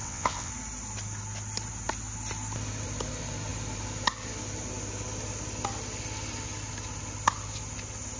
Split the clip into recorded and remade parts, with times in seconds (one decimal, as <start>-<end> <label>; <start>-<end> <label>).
0.0-0.5 remade; 0.5-8.2 recorded